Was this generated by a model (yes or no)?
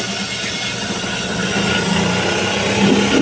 no